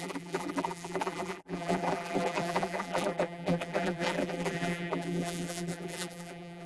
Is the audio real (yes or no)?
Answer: no